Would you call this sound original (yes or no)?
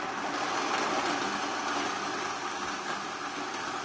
yes